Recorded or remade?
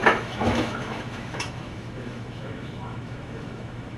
remade